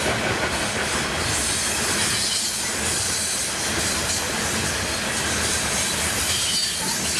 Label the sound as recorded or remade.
remade